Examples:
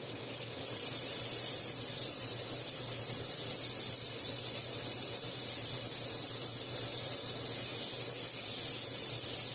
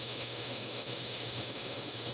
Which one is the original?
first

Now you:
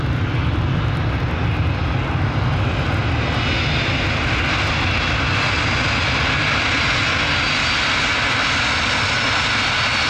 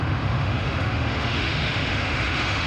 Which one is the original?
first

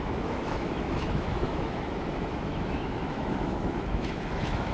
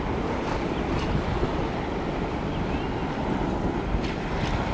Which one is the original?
second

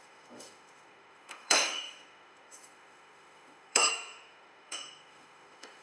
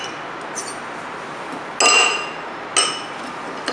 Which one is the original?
second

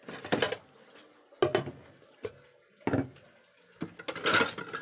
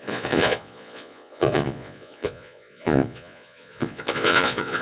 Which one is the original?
first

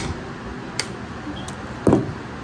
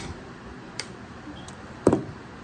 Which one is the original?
first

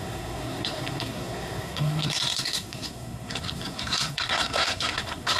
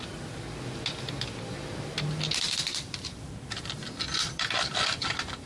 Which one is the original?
second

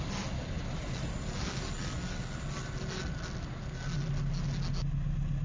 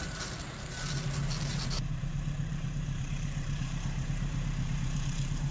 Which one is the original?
first